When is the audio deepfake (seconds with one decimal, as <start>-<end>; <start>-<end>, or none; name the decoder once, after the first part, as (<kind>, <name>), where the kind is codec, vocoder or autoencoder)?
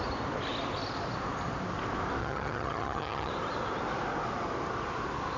2.2-3.3 (vocoder, HiFi-GAN)